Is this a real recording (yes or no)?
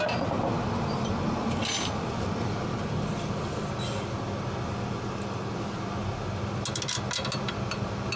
yes